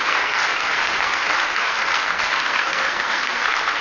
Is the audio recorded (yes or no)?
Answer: no